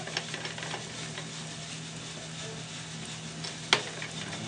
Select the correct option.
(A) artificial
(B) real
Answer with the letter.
B